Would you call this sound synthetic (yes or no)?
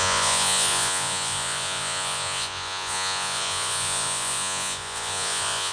yes